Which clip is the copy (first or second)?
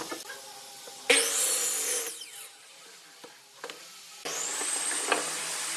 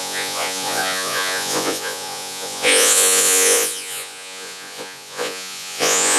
second